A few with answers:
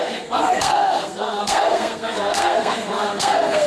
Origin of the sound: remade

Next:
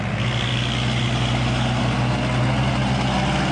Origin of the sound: recorded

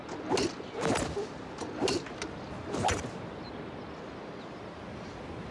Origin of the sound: recorded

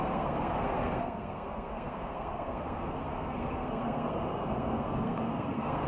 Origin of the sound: remade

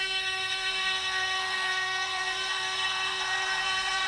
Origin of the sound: remade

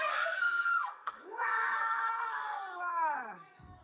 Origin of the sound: remade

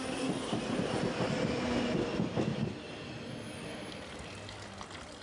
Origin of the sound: recorded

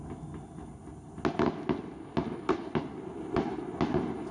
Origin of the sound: recorded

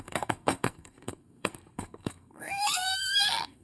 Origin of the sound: remade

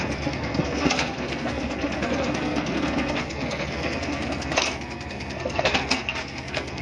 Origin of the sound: remade